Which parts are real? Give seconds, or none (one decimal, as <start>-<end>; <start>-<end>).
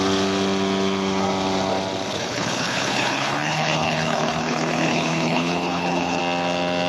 0.0-2.1; 6.2-6.9